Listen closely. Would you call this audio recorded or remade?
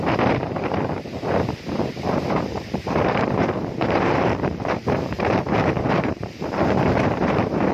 remade